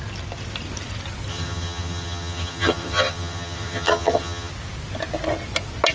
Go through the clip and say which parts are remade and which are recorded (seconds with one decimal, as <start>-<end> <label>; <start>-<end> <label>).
0.0-1.3 recorded; 1.3-4.5 remade; 4.5-5.9 recorded